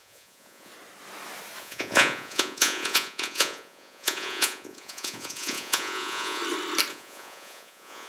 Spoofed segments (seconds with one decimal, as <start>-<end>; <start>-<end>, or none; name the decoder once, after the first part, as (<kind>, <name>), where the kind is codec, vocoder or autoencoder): 0.0-0.7 (vocoder, Vocos); 1.6-6.4; 6.9-8.1